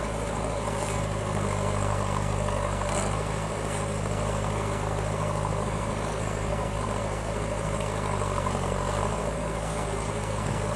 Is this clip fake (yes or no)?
yes